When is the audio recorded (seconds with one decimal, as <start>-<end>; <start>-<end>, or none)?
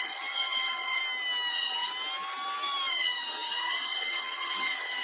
1.0-1.5; 1.9-2.9